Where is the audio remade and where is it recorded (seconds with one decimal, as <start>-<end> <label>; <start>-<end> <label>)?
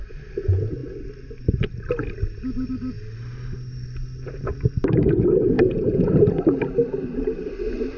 0.0-5.3 recorded; 5.3-6.2 remade; 6.2-8.0 recorded